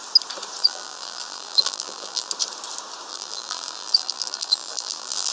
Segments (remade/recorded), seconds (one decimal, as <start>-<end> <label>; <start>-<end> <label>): 0.0-0.6 recorded; 0.6-2.3 remade; 2.3-3.1 recorded; 3.1-5.3 remade